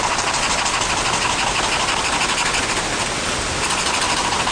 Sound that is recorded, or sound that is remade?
recorded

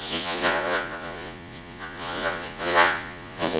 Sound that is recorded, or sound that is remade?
remade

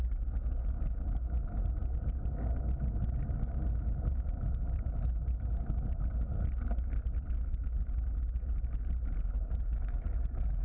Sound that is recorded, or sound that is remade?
recorded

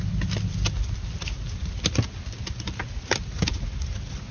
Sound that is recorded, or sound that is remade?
recorded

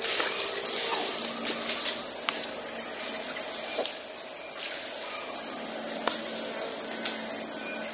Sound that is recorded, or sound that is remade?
recorded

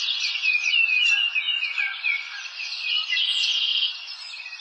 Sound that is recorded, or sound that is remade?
remade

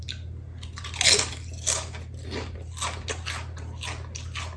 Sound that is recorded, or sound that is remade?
recorded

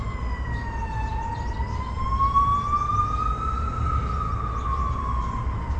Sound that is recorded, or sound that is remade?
recorded